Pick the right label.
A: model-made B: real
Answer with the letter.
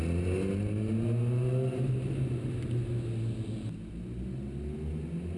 B